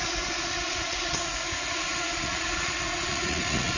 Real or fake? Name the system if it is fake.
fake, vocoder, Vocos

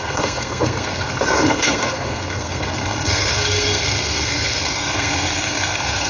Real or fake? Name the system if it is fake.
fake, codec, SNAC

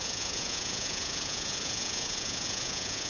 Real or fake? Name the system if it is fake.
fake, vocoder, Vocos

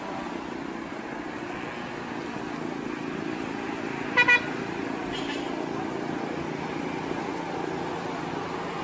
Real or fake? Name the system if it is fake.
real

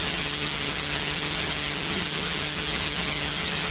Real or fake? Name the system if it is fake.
fake, vocoder, HiFi-GAN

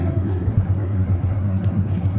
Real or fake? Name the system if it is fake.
fake, codec, SNAC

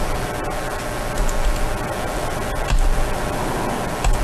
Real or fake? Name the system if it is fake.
real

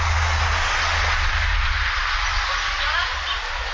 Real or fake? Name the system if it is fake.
real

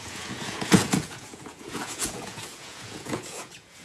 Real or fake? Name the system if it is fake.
fake, vocoder, Vocos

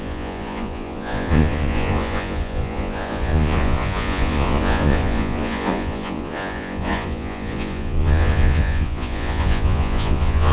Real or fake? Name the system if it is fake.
fake, vocoder, Vocos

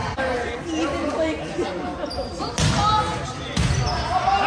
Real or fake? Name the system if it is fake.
real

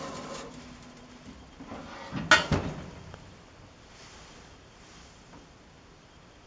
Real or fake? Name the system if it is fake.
real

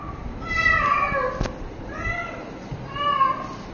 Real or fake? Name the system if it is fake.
real